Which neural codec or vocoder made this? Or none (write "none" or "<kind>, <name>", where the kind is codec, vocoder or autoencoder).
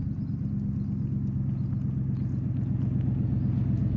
none